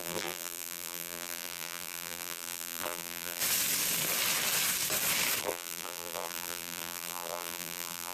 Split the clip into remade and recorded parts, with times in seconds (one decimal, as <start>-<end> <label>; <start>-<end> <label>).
0.0-3.4 remade; 3.4-5.4 recorded; 5.4-8.1 remade